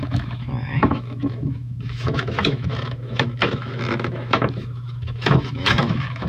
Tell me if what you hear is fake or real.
fake